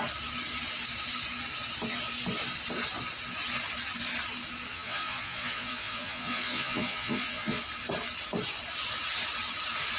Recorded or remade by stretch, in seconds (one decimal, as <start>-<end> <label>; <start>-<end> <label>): 0.0-4.7 recorded; 4.7-7.6 remade; 7.6-10.0 recorded